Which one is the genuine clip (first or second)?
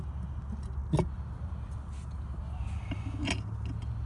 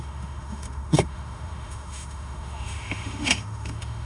first